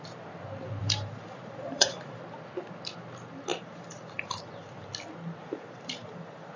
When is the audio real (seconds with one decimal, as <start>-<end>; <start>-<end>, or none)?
0.0-0.8; 2.2-3.5; 4.9-5.4